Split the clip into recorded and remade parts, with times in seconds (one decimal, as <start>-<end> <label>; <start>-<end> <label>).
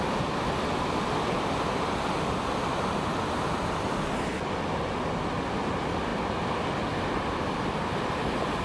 0.0-8.6 recorded